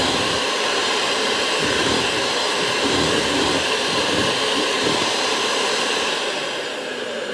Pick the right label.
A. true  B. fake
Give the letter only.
B